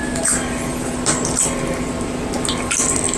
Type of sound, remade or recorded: recorded